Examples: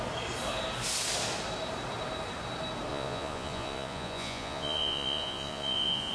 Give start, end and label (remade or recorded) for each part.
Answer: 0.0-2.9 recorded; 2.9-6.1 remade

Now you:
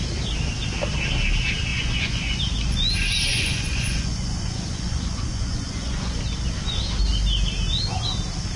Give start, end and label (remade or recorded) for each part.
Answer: 0.0-1.7 recorded; 1.7-2.4 remade; 2.4-3.3 recorded; 3.3-6.2 remade; 6.2-8.6 recorded

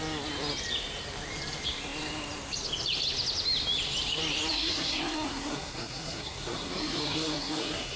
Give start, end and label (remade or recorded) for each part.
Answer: 0.0-4.5 recorded; 4.5-8.0 remade

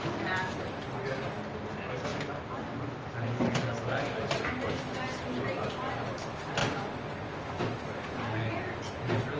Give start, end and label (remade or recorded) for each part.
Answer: 0.0-9.4 recorded

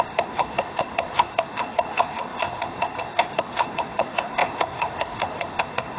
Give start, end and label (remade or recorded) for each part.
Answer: 0.0-6.0 remade

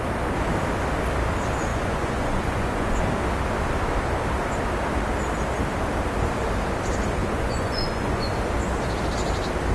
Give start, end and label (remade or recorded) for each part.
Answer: 0.0-1.7 recorded; 1.7-3.0 remade; 3.0-7.2 recorded; 7.2-8.3 remade; 8.3-9.7 recorded